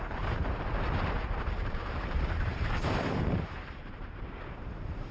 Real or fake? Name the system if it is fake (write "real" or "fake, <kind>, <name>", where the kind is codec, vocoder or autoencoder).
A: fake, vocoder, BigVGAN v2